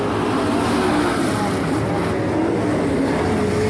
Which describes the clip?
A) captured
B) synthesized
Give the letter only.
A